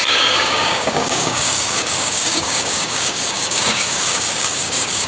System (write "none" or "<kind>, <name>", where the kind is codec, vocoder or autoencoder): codec, DAC